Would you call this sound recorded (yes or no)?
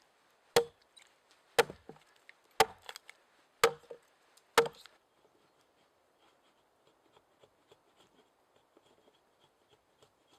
yes